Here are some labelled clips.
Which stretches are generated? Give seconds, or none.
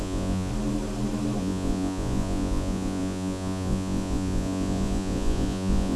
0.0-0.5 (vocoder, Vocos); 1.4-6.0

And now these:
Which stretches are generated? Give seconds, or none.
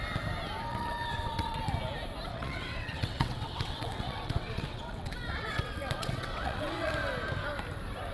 0.7-1.6 (vocoder, WaveNeXt); 2.3-6.9